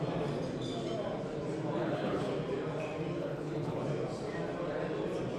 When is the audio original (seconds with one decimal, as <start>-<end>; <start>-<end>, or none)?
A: 0.0-1.8; 2.3-3.2; 3.8-5.4